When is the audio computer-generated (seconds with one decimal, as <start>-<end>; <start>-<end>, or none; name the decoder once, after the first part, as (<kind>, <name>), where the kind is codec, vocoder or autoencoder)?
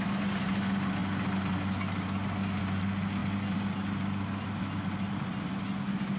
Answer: none